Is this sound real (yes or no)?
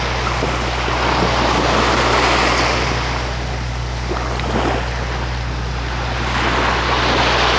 yes